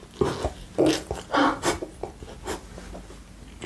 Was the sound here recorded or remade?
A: recorded